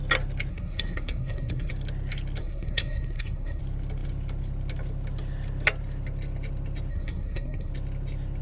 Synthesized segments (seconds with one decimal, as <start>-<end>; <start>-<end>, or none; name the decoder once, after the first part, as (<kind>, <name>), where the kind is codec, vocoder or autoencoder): 0.5-1.7 (codec, SNAC); 2.4-3.6; 6.9-7.7